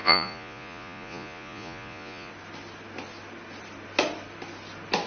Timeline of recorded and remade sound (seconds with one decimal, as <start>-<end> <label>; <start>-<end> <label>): 0.0-2.3 remade; 2.3-5.1 recorded